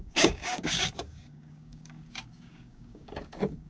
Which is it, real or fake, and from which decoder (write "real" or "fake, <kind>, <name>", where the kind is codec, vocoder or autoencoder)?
fake, codec, DAC